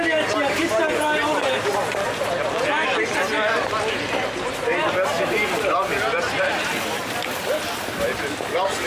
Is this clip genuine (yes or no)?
yes